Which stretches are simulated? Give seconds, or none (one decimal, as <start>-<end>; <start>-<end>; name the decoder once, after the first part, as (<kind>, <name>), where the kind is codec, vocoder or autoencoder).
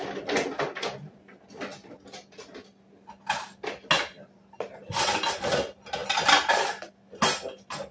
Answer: none